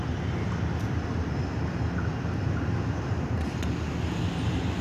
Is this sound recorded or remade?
recorded